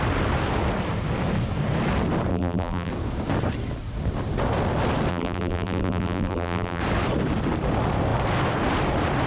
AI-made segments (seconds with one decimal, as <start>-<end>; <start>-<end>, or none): 2.3-2.9; 5.1-6.8